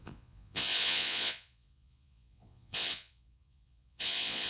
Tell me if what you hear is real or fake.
fake